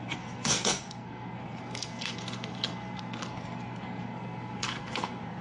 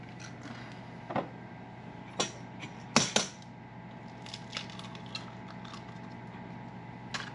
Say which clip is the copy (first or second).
first